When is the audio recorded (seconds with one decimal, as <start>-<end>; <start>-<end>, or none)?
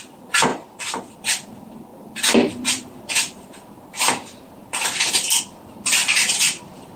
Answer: 0.0-0.5; 1.1-1.9; 5.1-6.0; 6.6-7.0